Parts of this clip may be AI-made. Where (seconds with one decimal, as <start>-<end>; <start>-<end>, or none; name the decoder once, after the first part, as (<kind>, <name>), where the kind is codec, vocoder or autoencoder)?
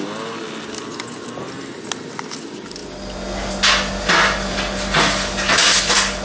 none